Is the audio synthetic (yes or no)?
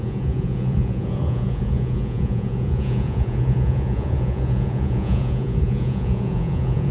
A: yes